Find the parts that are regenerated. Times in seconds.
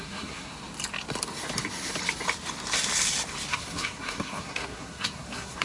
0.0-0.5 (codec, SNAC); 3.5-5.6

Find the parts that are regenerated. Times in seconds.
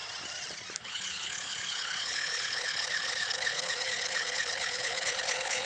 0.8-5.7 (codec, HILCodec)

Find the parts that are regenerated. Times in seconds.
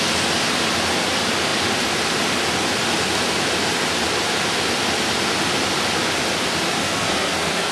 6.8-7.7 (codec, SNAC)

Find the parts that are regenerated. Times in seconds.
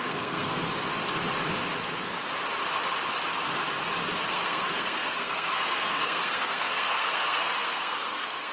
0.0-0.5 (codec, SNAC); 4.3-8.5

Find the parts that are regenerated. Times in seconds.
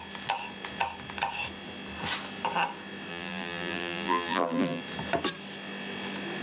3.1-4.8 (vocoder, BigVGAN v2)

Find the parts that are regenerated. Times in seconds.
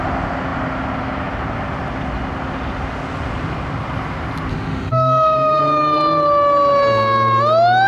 4.5-5.6 (autoencoder, DAC-VAE)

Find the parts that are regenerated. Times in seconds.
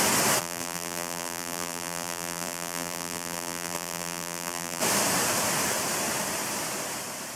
0.4-4.8 (vocoder, BigVGAN v2)